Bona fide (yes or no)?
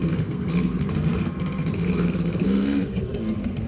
no